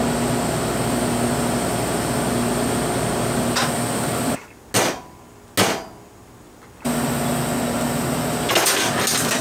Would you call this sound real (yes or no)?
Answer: yes